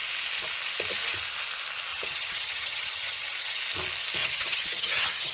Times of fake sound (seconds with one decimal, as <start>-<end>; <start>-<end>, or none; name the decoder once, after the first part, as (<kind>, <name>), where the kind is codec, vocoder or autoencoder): 1.9-3.6 (vocoder, HiFi-GAN); 4.2-5.3